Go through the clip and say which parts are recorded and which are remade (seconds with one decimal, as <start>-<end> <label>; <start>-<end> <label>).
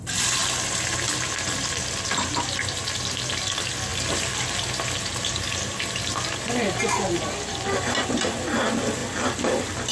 0.0-9.9 recorded